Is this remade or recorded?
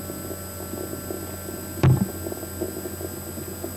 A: recorded